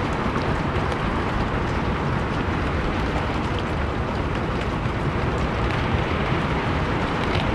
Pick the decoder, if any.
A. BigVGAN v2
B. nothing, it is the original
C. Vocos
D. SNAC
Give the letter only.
A